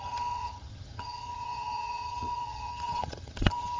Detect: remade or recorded remade